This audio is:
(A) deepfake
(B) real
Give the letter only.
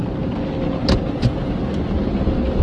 B